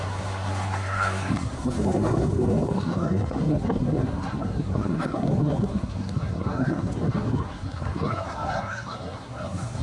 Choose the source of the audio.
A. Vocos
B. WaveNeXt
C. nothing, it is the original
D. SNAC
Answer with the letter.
D